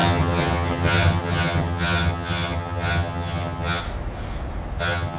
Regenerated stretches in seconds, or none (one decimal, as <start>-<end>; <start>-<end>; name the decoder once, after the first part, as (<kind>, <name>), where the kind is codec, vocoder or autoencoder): 0.0-3.8 (vocoder, HiFi-GAN); 4.8-5.2